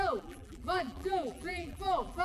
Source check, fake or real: fake